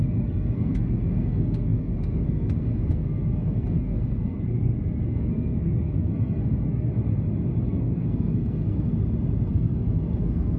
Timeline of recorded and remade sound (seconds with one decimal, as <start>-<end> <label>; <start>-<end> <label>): 0.0-6.9 remade; 6.9-7.6 recorded; 7.6-8.9 remade; 8.9-9.5 recorded; 9.5-10.6 remade